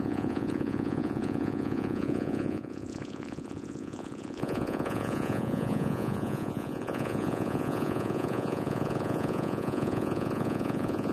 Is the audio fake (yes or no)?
yes